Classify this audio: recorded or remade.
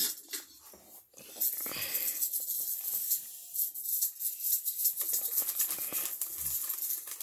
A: recorded